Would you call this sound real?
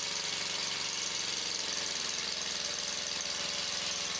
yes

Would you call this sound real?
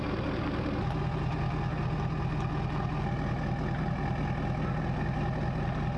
yes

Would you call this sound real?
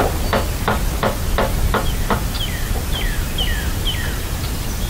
yes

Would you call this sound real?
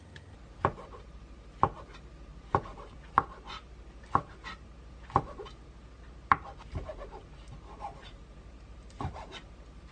yes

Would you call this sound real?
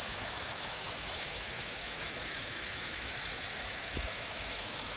no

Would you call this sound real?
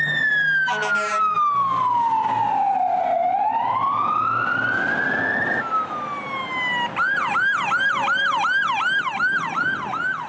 yes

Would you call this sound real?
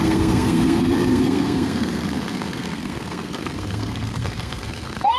no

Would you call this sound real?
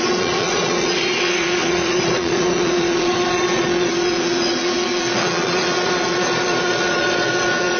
no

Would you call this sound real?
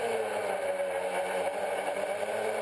yes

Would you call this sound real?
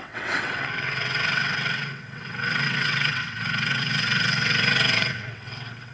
no